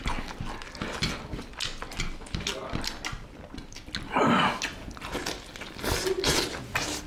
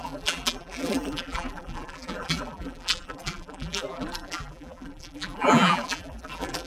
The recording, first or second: first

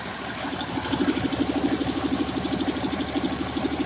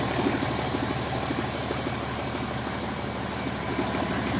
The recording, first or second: second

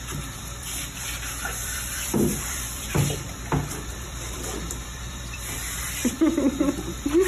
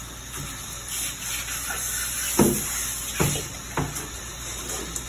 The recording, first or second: second